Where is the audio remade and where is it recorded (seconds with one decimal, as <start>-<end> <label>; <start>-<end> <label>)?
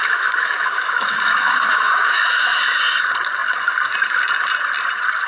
0.0-2.6 remade; 2.6-5.3 recorded